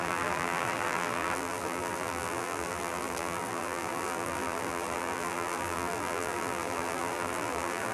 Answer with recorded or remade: remade